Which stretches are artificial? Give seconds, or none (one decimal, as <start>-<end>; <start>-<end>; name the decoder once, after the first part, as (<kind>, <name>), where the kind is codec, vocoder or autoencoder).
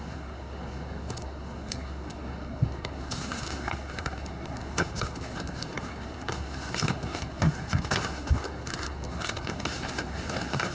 0.0-10.7 (codec, SNAC)